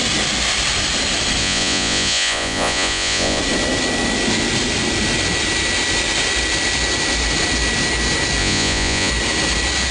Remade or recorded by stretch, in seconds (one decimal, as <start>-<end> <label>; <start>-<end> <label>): 0.0-1.4 recorded; 1.4-3.4 remade; 3.4-8.4 recorded; 8.4-9.1 remade; 9.1-9.9 recorded